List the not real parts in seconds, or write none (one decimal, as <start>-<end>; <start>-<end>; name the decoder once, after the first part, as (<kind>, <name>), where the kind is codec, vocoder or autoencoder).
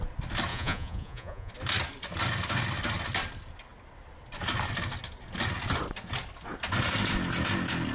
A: 0.5-1.5 (vocoder, Vocos)